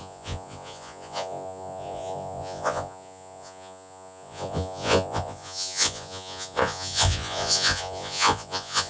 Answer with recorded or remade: remade